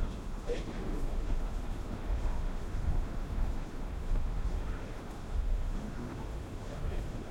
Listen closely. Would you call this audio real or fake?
fake